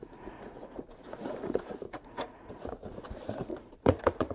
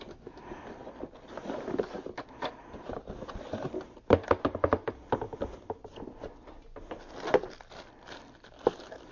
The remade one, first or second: first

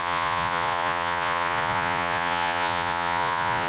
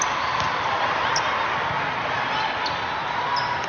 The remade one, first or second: first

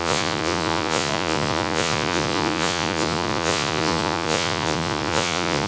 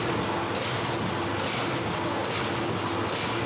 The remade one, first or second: first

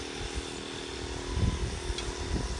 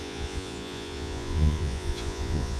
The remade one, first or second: second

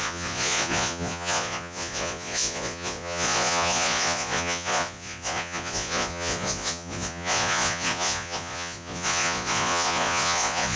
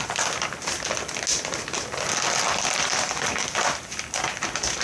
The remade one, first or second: first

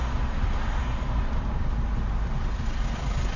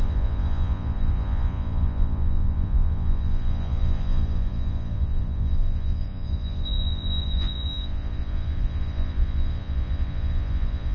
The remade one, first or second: second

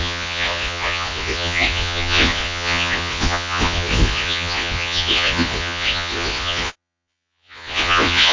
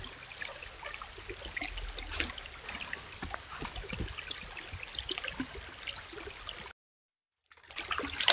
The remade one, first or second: first